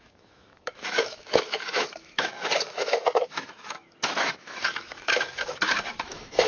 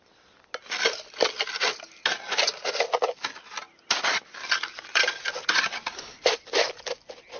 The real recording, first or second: second